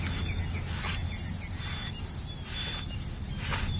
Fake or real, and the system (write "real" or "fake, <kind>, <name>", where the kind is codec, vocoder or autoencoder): real